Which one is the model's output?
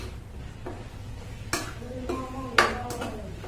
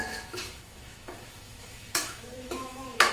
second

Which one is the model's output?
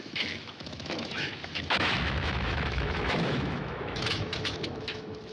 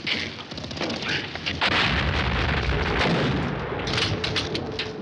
first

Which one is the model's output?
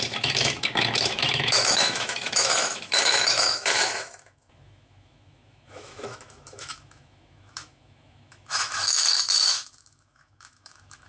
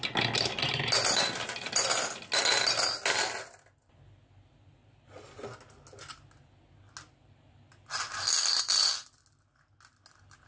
first